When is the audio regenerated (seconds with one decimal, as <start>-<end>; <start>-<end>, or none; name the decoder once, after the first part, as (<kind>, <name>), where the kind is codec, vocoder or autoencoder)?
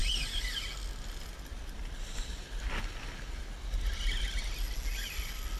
none